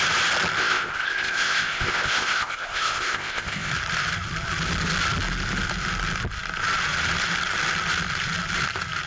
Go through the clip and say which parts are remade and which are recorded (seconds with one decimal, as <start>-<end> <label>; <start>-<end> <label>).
0.0-0.6 recorded; 0.6-3.7 remade; 3.7-9.1 recorded